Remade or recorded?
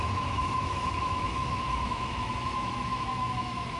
remade